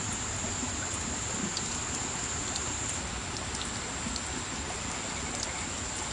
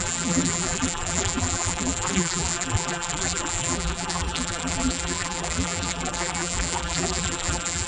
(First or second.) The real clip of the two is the first